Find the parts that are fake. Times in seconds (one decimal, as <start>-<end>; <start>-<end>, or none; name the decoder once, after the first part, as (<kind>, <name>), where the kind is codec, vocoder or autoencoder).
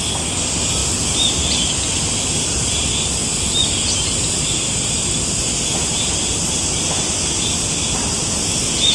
none